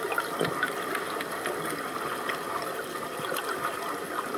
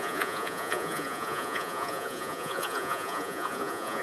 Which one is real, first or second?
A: first